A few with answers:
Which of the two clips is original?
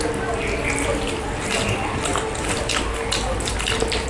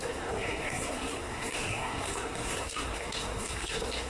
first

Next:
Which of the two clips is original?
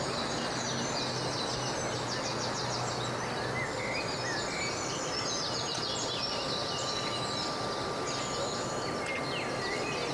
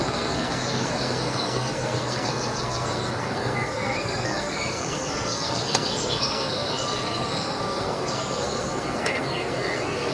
first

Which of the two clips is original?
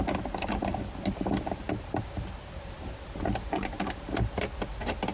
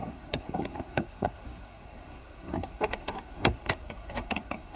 first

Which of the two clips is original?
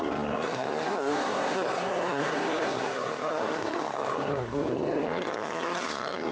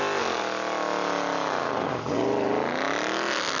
second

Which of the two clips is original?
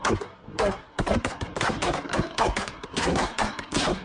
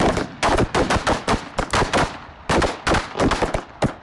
second